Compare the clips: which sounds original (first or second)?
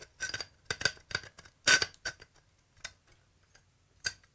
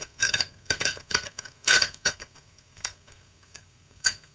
first